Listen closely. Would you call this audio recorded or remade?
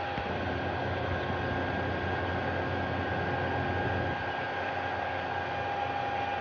recorded